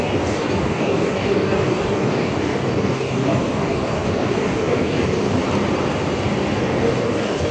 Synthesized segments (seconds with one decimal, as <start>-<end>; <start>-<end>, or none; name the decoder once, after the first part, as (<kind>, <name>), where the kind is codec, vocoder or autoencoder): 0.0-5.4 (codec, DAC); 6.6-7.5